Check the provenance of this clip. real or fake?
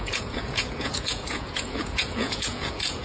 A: fake